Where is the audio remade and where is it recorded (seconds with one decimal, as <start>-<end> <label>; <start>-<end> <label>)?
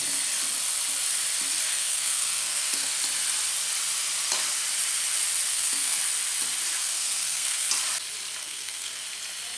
0.0-1.7 recorded; 1.7-2.9 remade; 2.9-5.5 recorded; 5.5-6.0 remade; 6.0-6.8 recorded; 6.8-7.7 remade; 7.7-8.4 recorded; 8.4-9.0 remade; 9.0-9.6 recorded